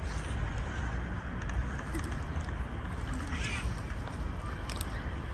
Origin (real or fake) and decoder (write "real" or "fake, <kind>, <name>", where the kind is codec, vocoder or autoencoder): real